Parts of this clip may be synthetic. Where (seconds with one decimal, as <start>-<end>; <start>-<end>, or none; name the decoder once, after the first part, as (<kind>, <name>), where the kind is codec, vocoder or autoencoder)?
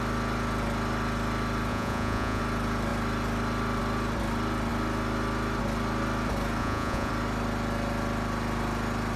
1.7-2.4 (vocoder, Vocos); 6.6-7.1